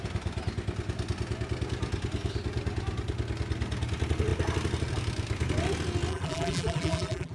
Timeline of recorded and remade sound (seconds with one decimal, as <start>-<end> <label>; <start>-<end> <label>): 0.0-6.1 recorded; 6.1-7.3 remade